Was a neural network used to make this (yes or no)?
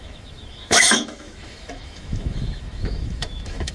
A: yes